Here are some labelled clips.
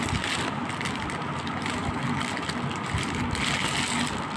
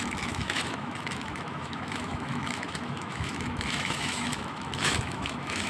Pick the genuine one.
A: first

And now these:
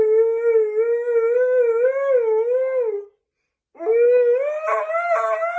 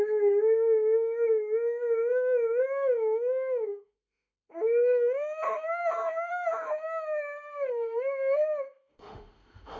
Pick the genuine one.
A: first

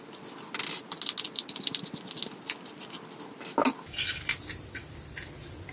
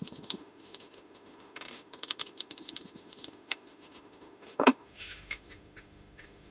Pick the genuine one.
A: first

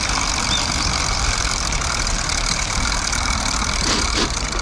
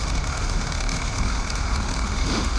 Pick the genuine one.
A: first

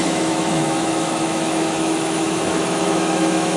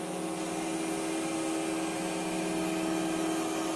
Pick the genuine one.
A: second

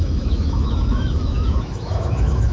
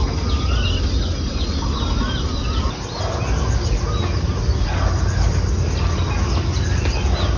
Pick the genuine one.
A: second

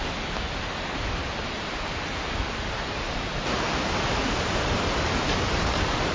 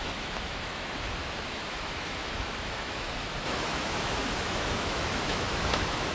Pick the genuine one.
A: first